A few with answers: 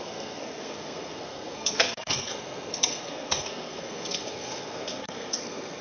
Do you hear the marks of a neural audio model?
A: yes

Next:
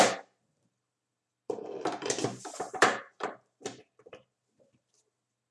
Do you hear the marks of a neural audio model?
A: yes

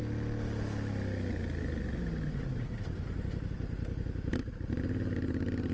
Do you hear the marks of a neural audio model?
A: no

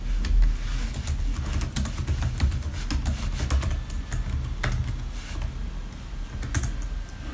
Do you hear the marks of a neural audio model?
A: no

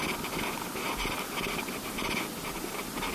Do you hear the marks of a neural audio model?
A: no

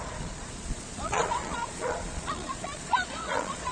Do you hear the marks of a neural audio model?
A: yes